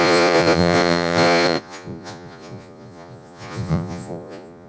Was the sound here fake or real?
fake